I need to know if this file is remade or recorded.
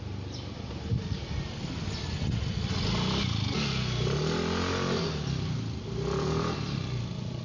recorded